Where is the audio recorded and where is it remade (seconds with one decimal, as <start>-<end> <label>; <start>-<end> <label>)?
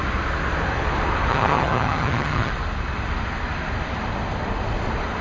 0.0-1.3 recorded; 1.3-2.5 remade; 2.5-5.2 recorded